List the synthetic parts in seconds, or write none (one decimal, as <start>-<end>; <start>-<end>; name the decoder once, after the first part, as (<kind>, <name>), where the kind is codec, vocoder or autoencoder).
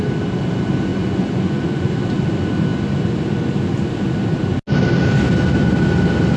0.9-1.9 (vocoder, Vocos)